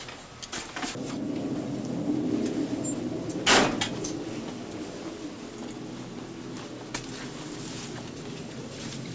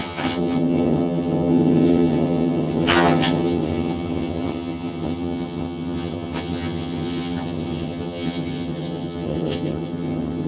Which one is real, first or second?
first